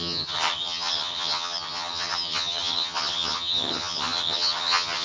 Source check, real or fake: fake